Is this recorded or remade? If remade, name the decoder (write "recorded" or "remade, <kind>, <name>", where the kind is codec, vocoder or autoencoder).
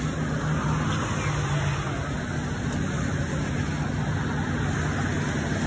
recorded